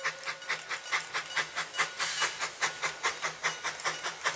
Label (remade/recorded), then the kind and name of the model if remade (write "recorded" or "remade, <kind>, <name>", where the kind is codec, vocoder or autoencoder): recorded